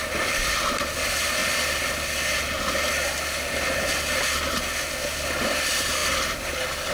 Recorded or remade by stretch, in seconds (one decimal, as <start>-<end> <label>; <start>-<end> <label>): 0.0-6.0 recorded; 6.0-6.5 remade; 6.5-6.9 recorded